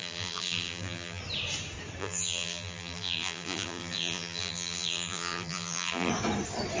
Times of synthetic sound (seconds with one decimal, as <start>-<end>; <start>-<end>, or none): 0.0-1.2; 2.0-6.1